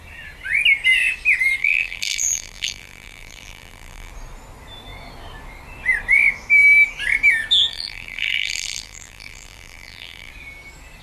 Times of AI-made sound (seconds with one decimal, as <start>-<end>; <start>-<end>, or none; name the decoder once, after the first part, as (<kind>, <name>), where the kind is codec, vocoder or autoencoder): 1.6-4.1 (vocoder, BigVGAN v2); 7.7-10.3